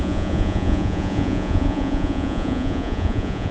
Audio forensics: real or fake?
fake